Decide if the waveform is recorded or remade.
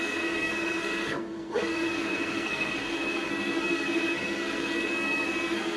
remade